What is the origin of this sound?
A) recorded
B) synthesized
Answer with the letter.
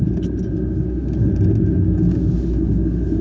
A